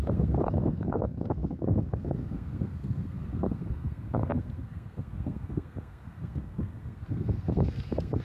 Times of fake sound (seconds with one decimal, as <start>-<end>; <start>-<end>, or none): 0.0-8.2